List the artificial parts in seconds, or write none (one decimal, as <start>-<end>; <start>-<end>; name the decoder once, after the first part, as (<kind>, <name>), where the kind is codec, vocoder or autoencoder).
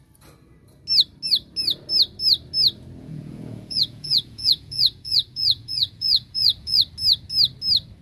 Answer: 3.0-6.8 (vocoder, Vocos)